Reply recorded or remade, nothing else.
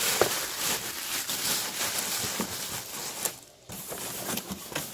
recorded